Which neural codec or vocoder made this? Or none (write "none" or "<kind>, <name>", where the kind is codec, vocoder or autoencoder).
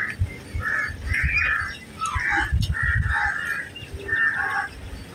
none